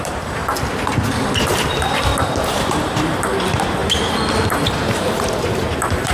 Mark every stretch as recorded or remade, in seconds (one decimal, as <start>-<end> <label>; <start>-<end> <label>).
0.0-0.4 remade; 0.4-1.4 recorded; 1.4-2.1 remade; 2.1-2.6 recorded; 2.6-3.8 remade; 3.8-4.5 recorded; 4.5-6.1 remade